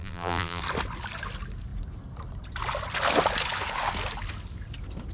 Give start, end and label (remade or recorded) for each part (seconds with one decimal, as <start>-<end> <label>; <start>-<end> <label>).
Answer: 0.0-0.6 remade; 0.6-5.1 recorded